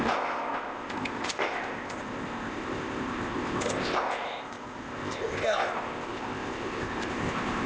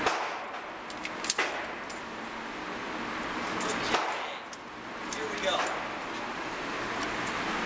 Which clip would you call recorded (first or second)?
second